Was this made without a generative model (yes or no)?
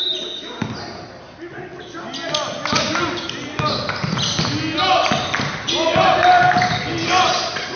yes